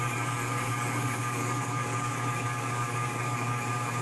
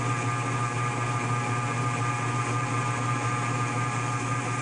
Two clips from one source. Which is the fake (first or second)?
first